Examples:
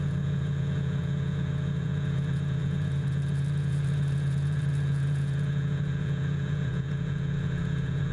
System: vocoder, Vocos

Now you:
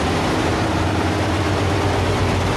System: none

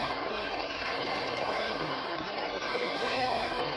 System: codec, SNAC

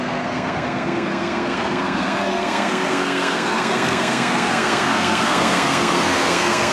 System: codec, SNAC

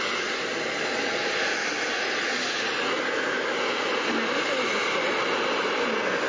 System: none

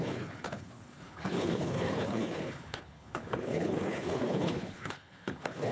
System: codec, HILCodec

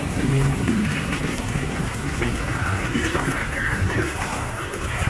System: codec, SNAC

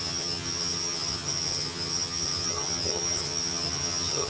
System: vocoder, HiFi-GAN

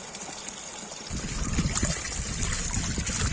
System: none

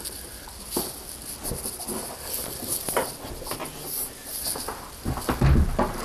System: none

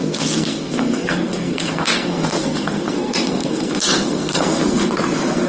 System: codec, SNAC